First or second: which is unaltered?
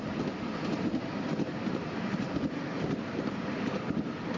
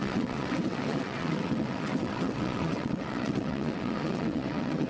first